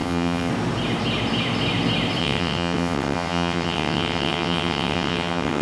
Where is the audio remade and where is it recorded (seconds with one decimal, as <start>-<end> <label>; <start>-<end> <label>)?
0.0-0.5 remade; 0.5-2.2 recorded; 2.2-5.6 remade